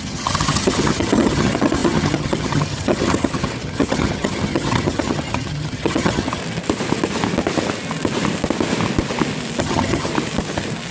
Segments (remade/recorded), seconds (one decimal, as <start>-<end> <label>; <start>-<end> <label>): 0.0-6.4 remade; 6.4-9.6 recorded; 9.6-10.1 remade; 10.1-10.9 recorded